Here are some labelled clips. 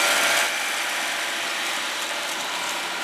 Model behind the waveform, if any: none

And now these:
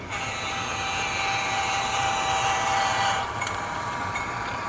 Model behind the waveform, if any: vocoder, BigVGAN v2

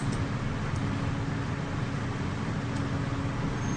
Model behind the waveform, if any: none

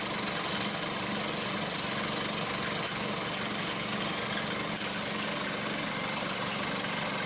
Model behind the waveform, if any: none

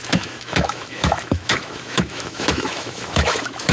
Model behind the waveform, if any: autoencoder, DAC-VAE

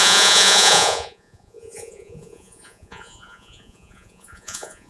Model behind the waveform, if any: vocoder, Vocos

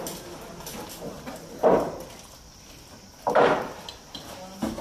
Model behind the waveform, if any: none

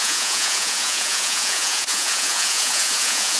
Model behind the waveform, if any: vocoder, Vocos